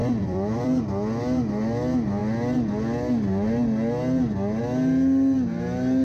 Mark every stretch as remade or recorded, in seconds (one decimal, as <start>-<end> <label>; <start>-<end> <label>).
0.0-0.8 remade; 0.8-6.0 recorded